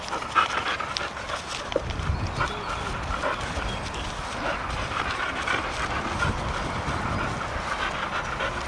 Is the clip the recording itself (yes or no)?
yes